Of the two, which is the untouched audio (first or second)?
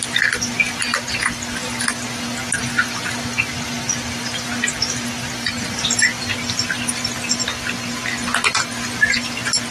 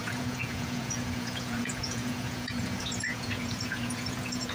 first